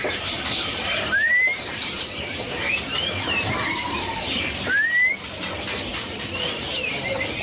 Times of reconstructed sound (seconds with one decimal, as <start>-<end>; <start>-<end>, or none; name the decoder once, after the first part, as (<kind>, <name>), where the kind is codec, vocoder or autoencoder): 0.0-4.4 (vocoder, BigVGAN v2); 5.9-7.0